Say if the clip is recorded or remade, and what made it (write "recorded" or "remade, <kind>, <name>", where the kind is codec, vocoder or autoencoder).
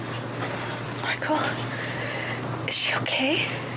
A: recorded